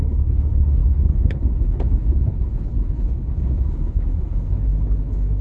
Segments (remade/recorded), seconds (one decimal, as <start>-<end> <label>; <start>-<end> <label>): 0.0-5.4 remade